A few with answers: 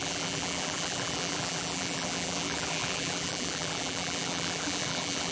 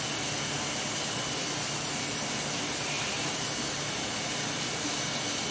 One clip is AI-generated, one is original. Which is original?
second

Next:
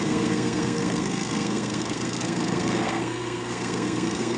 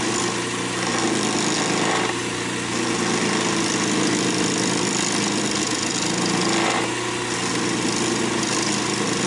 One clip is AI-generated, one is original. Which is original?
second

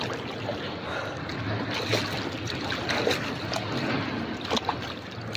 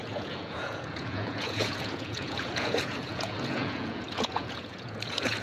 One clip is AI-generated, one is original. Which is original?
first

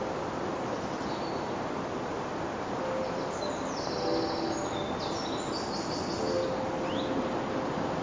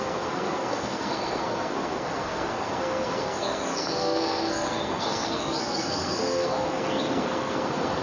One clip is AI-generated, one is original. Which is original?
first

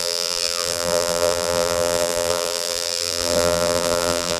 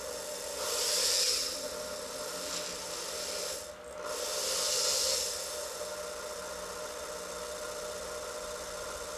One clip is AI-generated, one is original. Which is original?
second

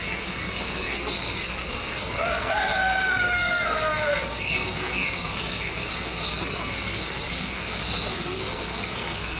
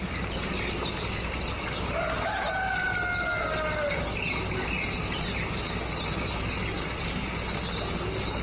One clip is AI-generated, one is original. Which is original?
second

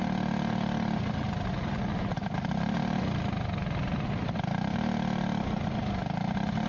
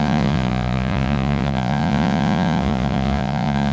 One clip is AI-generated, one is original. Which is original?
first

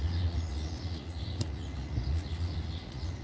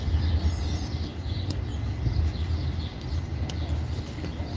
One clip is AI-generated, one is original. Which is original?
second